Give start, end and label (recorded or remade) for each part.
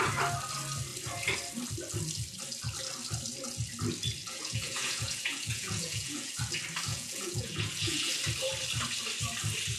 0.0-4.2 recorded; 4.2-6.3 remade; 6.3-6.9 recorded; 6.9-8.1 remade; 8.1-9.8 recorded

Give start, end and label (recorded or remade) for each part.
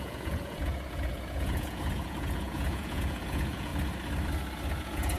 0.0-3.7 remade; 3.7-4.8 recorded; 4.8-5.2 remade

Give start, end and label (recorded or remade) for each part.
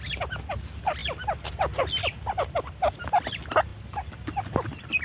0.0-5.0 recorded